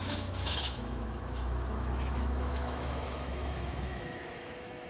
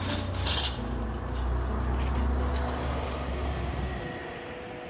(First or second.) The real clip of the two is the second